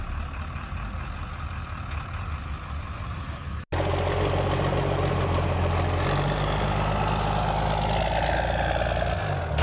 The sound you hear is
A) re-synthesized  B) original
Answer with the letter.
B